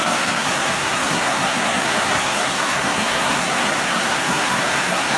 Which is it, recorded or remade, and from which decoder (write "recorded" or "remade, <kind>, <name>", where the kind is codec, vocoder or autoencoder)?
remade, codec, SNAC